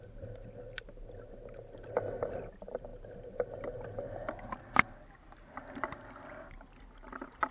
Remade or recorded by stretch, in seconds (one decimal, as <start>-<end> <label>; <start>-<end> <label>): 0.0-7.5 recorded